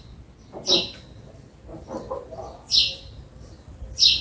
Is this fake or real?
real